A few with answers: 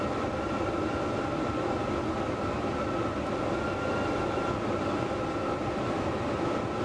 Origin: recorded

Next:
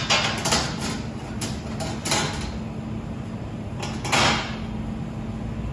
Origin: recorded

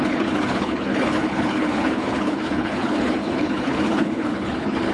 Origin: remade